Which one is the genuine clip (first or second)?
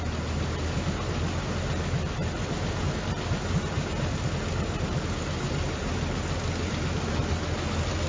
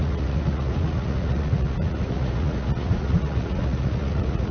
first